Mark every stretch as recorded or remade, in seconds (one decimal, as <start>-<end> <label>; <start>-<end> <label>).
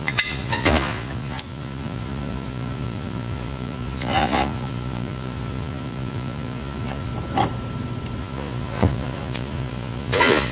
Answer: 0.0-7.1 remade; 7.1-8.2 recorded; 8.2-10.5 remade